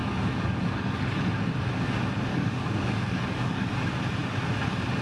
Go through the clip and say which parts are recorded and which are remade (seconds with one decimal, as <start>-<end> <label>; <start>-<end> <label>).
0.0-1.2 remade; 1.2-2.3 recorded; 2.3-3.7 remade; 3.7-5.0 recorded